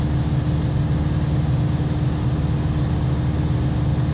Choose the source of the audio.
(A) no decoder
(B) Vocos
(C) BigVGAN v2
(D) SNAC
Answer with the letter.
A